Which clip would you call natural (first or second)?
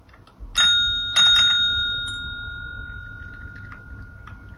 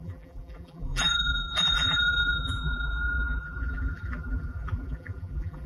first